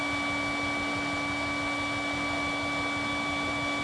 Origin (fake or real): real